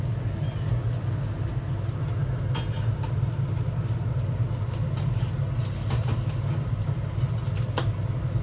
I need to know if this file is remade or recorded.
recorded